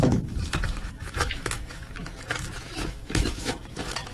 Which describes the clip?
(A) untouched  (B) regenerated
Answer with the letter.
B